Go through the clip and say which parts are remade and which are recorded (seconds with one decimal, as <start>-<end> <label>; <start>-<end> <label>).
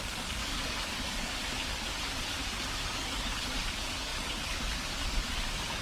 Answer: 0.0-1.4 remade; 1.4-2.9 recorded; 2.9-5.8 remade